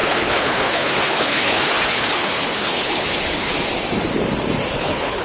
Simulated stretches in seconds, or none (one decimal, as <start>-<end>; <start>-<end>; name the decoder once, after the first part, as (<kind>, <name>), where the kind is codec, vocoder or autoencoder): 0.0-3.5 (codec, HILCodec); 4.7-5.2